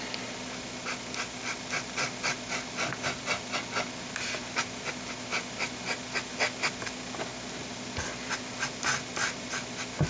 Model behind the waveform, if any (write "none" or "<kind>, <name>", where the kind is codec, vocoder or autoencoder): none